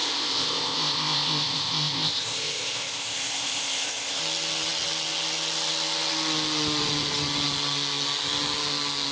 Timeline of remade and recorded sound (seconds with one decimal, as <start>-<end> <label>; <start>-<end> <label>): 0.0-4.2 remade; 4.2-9.1 recorded